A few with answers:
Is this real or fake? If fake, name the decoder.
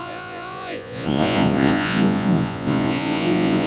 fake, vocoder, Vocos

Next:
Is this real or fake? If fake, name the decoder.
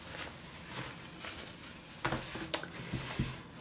real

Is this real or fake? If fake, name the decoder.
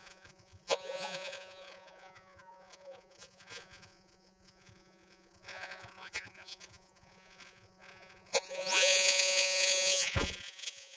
fake, vocoder, Vocos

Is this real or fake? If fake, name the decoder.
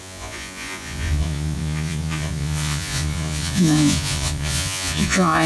fake, vocoder, Vocos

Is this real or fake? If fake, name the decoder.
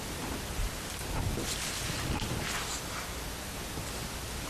real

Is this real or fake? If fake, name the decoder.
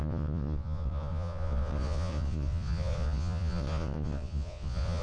fake, vocoder, Vocos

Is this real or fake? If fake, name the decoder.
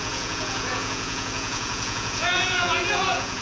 fake, vocoder, Vocos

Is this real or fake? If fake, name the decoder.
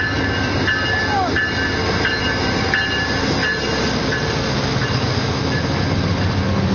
real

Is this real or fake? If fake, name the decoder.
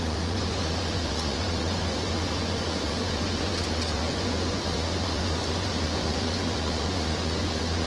fake, vocoder, Vocos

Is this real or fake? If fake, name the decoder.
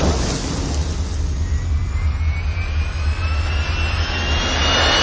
real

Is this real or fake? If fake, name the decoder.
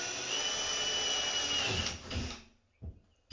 real